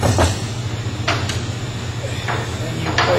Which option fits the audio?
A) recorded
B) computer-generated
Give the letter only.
A